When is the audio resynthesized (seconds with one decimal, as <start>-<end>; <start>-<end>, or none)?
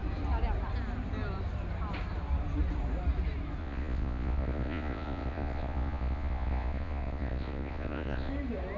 3.6-8.3